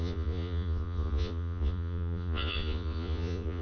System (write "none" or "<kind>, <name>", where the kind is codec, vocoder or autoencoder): vocoder, Vocos